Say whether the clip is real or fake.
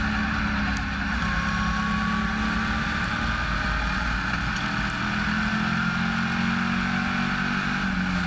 real